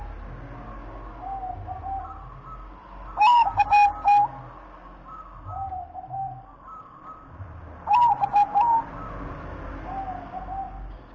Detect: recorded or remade recorded